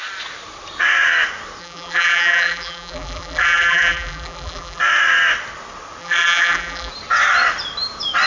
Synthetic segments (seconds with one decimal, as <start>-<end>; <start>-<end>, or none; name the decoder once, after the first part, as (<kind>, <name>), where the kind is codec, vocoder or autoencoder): 1.6-4.8 (vocoder, BigVGAN v2); 6.0-6.9